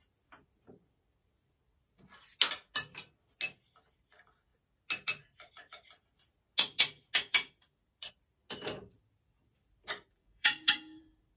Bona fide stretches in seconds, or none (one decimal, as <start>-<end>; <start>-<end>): 0.0-10.2; 11.0-11.4